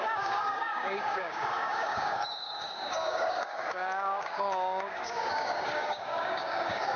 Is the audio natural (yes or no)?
no